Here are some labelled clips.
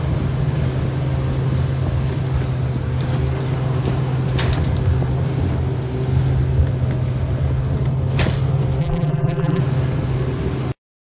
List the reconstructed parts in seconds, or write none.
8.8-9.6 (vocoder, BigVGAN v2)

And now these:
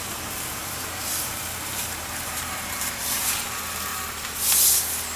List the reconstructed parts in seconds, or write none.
0.0-3.9 (vocoder, BigVGAN v2)

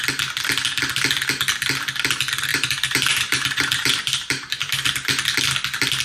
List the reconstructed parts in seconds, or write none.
2.5-4.8 (vocoder, BigVGAN v2)

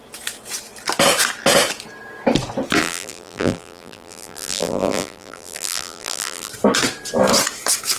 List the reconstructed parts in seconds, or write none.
2.8-6.5 (vocoder, BigVGAN v2)

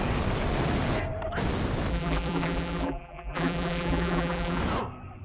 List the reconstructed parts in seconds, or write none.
1.9-4.6 (vocoder, BigVGAN v2)

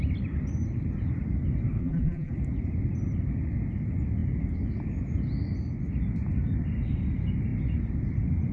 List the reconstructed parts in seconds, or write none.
1.8-2.3 (vocoder, BigVGAN v2)

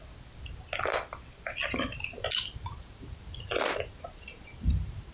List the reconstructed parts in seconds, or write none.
1.9-5.1 (vocoder, BigVGAN v2)